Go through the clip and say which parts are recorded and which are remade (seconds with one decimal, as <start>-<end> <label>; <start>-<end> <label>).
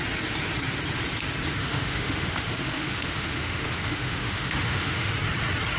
0.0-1.6 recorded; 1.6-5.1 remade; 5.1-5.8 recorded